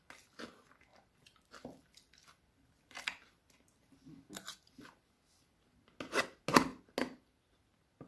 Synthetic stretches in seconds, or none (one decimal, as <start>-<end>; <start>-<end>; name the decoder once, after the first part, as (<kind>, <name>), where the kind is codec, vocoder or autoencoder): 0.9-4.0 (vocoder, BigVGAN v2)